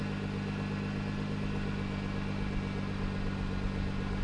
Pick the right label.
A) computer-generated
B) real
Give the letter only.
B